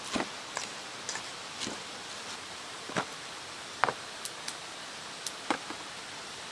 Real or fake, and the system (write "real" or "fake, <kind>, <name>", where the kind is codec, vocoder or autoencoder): real